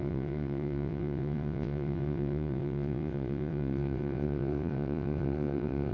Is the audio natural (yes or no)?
no